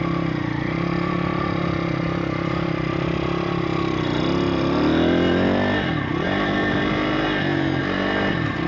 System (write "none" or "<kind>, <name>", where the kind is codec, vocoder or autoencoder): none